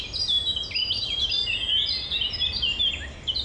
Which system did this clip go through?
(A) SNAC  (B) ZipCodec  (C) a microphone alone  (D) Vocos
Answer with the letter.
C